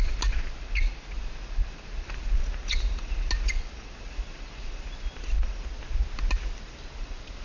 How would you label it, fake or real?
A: real